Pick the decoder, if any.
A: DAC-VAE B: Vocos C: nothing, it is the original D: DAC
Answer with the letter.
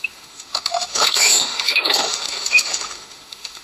A